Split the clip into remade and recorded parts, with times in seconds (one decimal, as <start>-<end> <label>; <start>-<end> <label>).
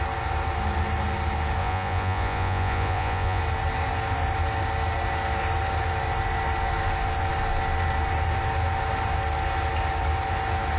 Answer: 0.0-1.6 recorded; 1.6-3.4 remade; 3.4-10.8 recorded